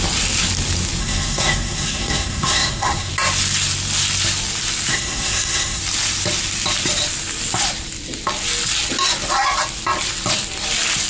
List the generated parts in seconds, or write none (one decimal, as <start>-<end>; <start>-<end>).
1.0-3.1; 4.9-5.8